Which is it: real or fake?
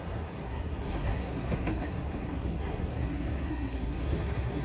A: fake